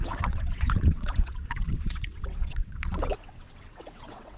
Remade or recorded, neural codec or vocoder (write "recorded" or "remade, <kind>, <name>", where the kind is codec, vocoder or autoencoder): remade, vocoder, WaveNeXt